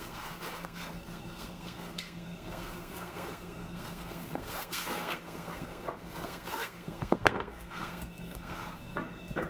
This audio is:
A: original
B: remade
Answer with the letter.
B